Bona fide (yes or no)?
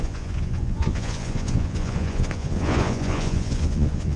no